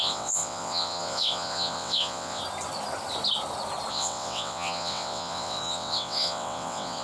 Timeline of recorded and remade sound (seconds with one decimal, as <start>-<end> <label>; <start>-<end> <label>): 0.0-2.4 remade; 2.4-3.9 recorded; 3.9-7.0 remade